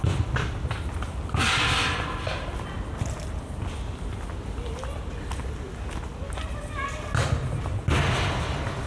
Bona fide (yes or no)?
yes